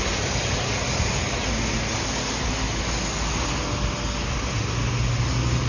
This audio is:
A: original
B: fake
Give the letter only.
A